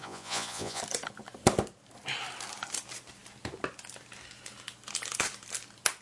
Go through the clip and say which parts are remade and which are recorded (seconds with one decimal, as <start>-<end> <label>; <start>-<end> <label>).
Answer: 0.0-0.8 remade; 0.8-6.0 recorded